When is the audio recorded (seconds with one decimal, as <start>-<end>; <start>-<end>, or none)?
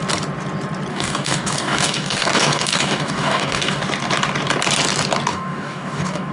0.0-0.9; 3.8-5.3